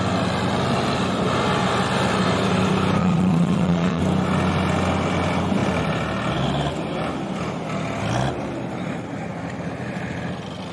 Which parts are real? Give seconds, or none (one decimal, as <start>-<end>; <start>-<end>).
0.0-3.0; 4.0-10.7

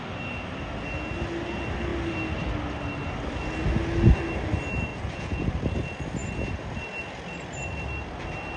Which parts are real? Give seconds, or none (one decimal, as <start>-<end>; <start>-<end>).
0.0-4.9; 5.5-8.6

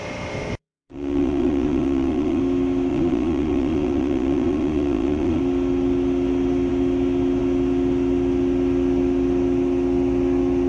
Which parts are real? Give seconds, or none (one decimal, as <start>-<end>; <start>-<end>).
0.0-0.6; 2.4-2.9; 5.4-10.7

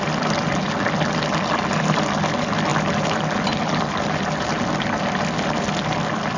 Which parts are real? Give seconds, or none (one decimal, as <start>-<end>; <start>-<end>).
0.0-6.4

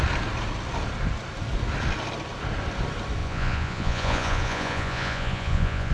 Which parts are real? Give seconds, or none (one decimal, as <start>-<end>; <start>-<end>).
0.0-3.2

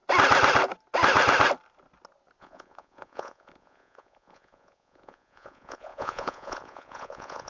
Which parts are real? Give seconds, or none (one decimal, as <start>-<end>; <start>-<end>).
0.0-2.4

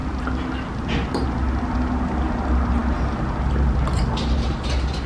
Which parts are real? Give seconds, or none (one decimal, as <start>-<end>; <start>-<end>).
0.0-5.1

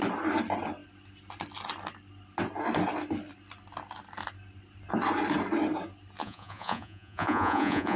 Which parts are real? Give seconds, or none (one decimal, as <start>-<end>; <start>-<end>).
0.0-6.2